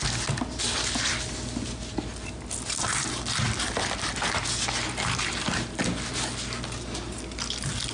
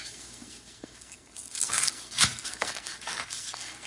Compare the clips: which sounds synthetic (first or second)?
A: second